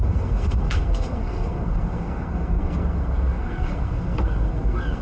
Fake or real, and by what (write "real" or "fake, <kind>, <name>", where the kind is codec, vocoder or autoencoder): fake, codec, SNAC